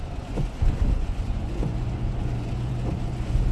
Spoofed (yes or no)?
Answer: yes